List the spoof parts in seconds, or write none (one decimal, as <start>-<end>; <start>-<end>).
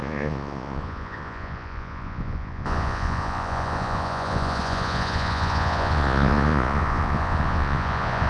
0.0-8.3